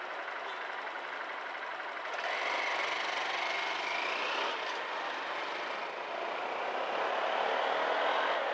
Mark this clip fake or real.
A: real